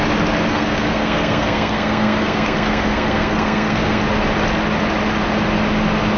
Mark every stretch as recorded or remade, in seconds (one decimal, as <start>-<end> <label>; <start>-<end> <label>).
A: 0.0-0.5 recorded; 0.5-4.0 remade; 4.0-6.2 recorded